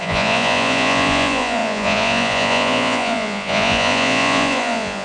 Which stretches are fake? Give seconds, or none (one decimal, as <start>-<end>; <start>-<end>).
0.0-5.0